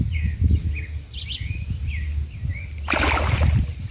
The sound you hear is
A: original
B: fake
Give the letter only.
A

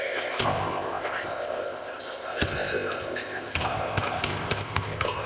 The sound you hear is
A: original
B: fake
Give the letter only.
B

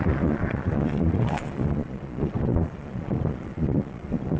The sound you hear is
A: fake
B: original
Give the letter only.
A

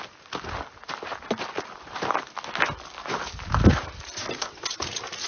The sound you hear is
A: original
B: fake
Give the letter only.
A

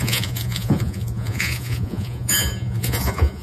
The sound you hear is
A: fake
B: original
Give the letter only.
A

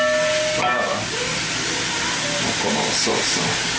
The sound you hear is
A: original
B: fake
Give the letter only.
A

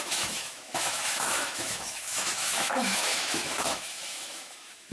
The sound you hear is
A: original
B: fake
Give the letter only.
B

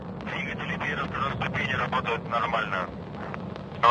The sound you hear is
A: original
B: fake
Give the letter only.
A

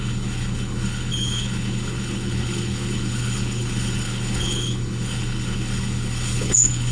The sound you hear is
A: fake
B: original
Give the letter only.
A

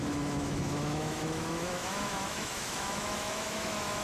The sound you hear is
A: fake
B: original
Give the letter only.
A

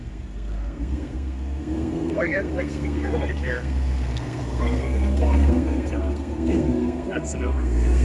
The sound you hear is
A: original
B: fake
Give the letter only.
B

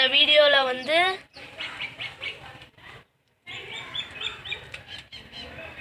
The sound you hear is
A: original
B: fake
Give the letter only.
B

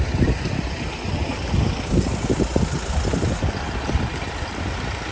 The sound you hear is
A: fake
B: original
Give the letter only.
B